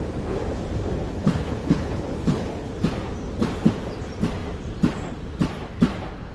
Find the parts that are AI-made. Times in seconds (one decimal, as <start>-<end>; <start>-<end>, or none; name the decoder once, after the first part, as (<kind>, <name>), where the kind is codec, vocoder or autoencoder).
0.9-2.7 (codec, HILCodec)

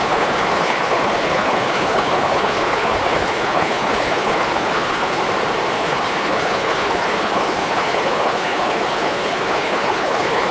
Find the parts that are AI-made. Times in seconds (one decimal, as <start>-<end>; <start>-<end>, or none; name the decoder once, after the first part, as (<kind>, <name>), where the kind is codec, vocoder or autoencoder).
0.0-5.2 (codec, HILCodec); 5.7-10.5

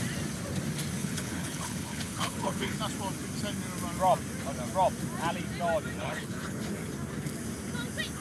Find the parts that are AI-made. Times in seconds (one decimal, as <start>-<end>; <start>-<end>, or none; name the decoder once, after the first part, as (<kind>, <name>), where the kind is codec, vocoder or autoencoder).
1.0-2.8 (codec, HILCodec); 6.0-6.6

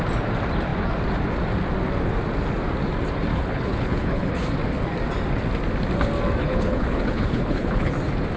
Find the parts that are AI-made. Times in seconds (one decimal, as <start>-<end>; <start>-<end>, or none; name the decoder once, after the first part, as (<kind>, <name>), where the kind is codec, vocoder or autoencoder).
3.3-4.3 (codec, HILCodec); 6.4-7.9

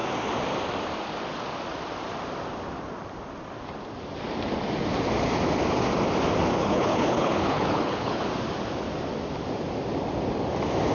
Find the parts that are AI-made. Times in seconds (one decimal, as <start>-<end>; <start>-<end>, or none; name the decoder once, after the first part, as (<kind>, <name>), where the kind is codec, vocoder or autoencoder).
6.6-8.2 (codec, HILCodec)